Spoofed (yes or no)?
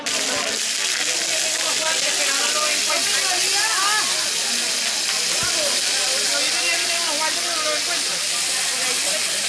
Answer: no